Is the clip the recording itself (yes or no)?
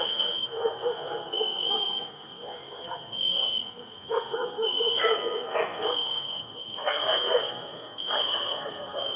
no